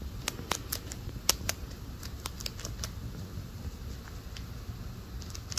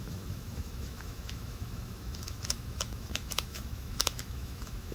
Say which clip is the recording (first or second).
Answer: first